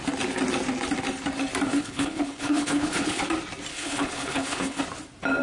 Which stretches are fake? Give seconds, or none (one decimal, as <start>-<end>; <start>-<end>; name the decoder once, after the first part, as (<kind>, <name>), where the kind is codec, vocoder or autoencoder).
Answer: 1.7-3.2 (codec, HILCodec); 3.7-4.8